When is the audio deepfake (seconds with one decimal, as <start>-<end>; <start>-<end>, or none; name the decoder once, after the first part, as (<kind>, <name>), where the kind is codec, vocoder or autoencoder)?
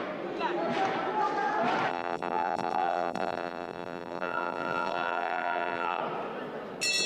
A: 1.9-6.0 (vocoder, BigVGAN v2)